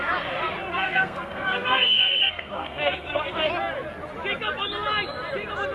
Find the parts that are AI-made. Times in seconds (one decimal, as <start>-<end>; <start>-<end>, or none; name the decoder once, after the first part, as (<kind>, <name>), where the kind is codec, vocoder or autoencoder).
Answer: 0.7-3.5 (codec, SNAC)